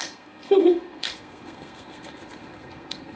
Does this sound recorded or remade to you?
remade